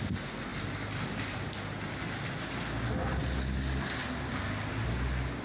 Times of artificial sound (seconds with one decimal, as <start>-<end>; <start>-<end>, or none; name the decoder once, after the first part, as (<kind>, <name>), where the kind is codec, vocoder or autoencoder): none